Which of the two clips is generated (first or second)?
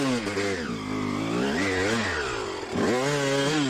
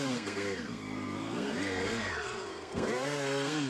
second